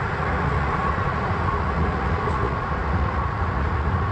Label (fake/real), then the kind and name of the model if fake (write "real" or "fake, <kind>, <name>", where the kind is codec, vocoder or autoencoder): fake, vocoder, Vocos